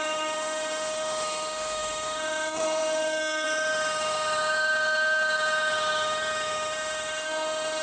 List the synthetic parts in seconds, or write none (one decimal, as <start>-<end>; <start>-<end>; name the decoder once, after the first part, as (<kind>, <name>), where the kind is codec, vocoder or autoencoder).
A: 0.0-7.8 (autoencoder, DAC-VAE)